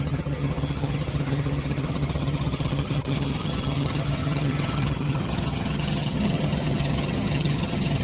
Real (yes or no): no